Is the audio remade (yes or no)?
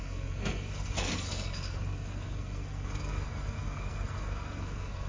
yes